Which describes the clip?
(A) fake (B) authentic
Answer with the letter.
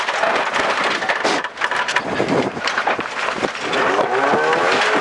B